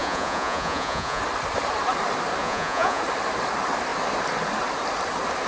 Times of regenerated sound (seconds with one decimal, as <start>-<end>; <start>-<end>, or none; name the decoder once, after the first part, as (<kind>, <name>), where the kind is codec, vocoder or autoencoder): 0.0-1.2 (vocoder, Vocos); 2.4-3.0